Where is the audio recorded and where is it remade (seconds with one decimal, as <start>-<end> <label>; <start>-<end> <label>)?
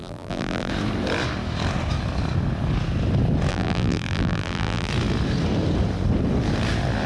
0.0-0.7 remade; 0.7-3.5 recorded; 3.5-4.9 remade; 4.9-7.1 recorded